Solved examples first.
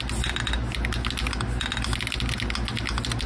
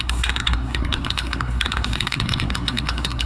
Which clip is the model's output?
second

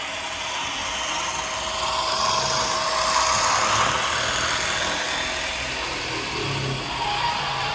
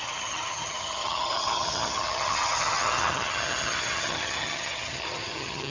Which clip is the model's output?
second